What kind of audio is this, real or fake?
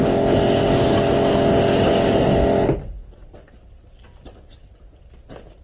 real